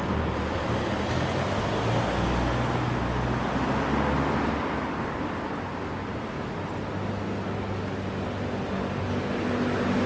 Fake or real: real